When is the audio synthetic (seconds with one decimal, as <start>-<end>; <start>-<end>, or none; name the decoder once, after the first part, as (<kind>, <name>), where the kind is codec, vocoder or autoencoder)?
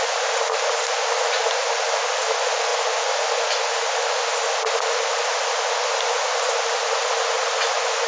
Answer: none